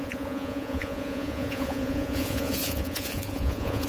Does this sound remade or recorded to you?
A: remade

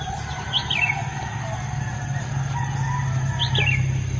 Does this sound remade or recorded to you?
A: recorded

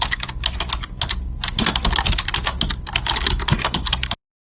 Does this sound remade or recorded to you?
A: recorded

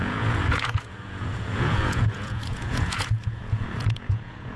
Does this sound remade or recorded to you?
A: remade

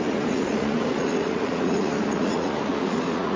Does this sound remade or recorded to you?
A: remade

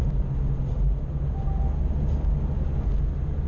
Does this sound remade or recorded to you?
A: recorded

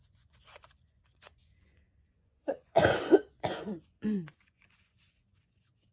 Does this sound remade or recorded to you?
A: remade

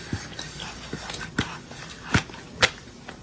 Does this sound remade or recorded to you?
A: recorded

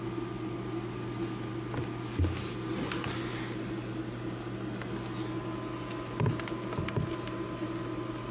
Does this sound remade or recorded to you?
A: recorded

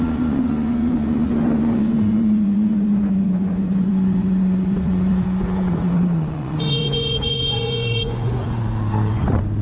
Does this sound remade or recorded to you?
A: remade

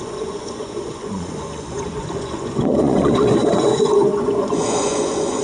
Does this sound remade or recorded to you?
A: remade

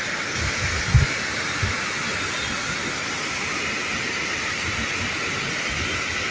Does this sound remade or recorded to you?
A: recorded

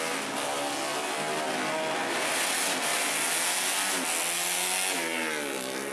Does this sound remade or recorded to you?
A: recorded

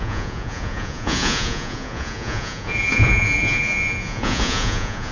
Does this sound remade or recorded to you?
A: remade